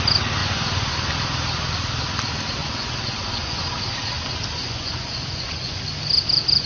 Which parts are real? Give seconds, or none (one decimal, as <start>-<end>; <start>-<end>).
0.0-0.4; 1.1-2.6; 3.6-4.6; 5.8-6.7